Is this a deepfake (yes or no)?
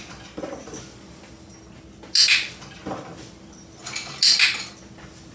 no